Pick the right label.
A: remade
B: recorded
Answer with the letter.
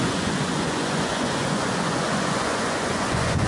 A